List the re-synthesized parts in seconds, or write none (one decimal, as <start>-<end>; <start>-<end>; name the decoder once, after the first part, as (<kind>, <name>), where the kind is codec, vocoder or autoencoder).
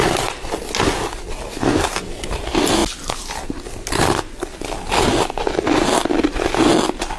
none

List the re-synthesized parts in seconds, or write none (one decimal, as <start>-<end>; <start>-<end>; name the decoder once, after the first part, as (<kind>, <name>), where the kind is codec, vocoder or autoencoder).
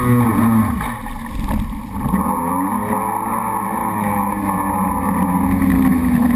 3.8-4.3 (autoencoder, DAC-VAE); 5.9-6.4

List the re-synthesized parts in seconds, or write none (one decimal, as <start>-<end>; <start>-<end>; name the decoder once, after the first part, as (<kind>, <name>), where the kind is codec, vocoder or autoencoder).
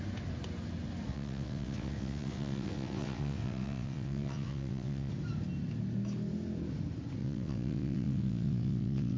1.1-5.1 (vocoder, WaveNeXt); 7.2-9.2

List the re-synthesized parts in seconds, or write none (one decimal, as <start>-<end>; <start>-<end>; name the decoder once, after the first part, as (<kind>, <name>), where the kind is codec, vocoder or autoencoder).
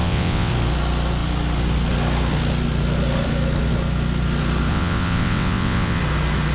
0.0-0.5 (vocoder, WaveNeXt); 4.7-6.0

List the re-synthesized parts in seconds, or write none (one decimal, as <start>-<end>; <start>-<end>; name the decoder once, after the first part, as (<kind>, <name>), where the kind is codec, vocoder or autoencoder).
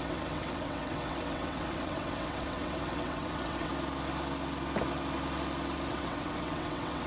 0.0-3.7 (vocoder, WaveNeXt); 5.9-7.1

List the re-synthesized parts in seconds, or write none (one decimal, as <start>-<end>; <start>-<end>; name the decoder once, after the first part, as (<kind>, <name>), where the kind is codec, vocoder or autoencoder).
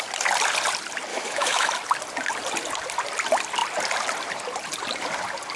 1.1-1.7 (autoencoder, DAC-VAE)